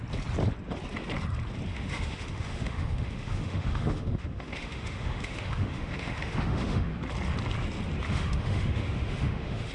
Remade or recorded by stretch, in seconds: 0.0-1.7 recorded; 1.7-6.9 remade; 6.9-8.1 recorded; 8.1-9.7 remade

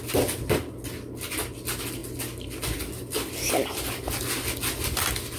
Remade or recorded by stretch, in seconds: 0.0-5.4 recorded

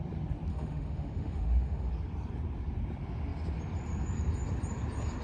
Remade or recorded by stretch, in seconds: 0.0-0.5 recorded; 0.5-1.9 remade; 1.9-5.2 recorded

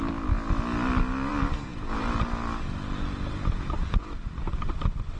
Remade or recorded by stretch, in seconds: 0.0-5.2 recorded

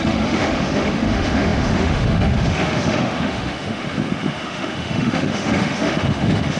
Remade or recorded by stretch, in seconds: 0.0-6.6 remade